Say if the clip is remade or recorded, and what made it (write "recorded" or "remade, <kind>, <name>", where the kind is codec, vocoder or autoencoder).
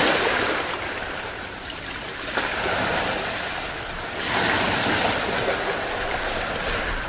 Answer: recorded